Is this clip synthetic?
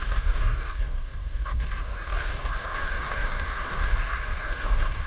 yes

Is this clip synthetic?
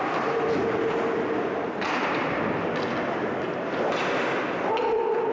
no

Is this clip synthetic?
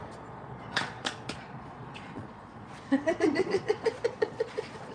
yes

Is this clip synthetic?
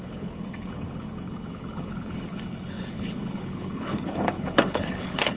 yes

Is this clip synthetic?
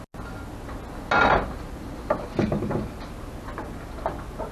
no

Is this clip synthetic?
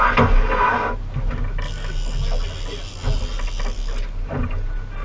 no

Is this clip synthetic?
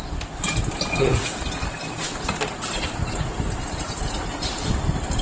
no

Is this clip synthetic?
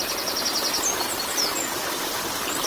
no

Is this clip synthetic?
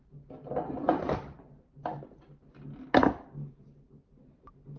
no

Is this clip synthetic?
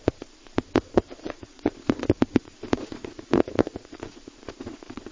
yes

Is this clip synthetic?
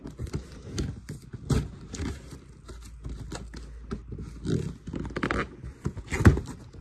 no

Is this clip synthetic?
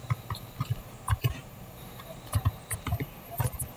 yes